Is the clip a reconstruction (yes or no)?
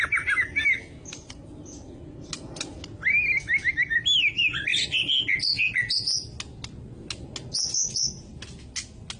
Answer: no